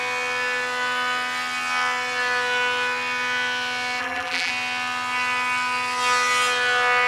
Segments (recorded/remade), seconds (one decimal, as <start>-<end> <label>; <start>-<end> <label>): 0.0-4.0 recorded; 4.0-4.5 remade; 4.5-7.1 recorded